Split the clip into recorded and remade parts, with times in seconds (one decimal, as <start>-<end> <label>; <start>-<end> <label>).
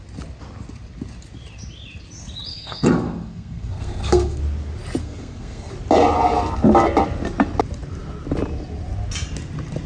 0.0-2.5 recorded; 2.5-4.4 remade; 4.4-5.0 recorded; 5.0-5.7 remade; 5.7-9.9 recorded